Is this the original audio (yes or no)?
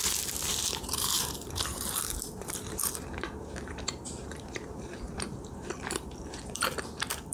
no